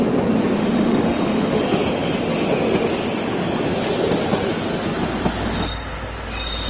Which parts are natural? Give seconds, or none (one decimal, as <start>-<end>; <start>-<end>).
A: 0.0-0.6; 1.6-6.7